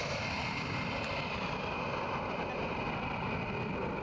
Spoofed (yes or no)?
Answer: no